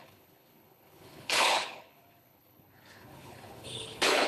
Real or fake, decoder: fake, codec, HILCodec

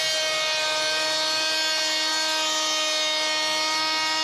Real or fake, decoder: real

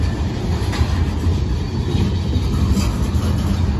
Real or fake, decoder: real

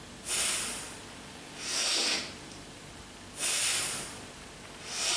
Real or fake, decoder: real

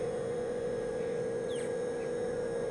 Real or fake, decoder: fake, vocoder, Vocos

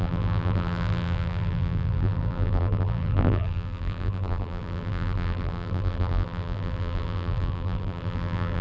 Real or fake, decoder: fake, vocoder, BigVGAN v2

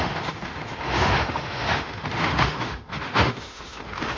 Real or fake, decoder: fake, autoencoder, DAC-VAE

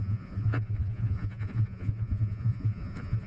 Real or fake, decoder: fake, vocoder, Vocos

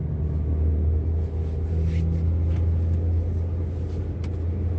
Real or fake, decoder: real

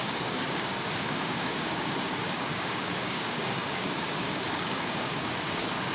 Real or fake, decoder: fake, codec, DAC